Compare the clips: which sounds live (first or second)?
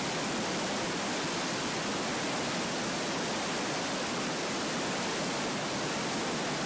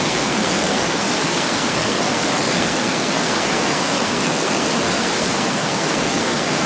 first